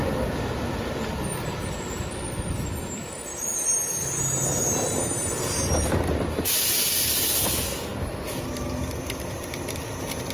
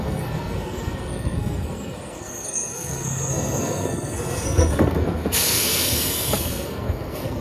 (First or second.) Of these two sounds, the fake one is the second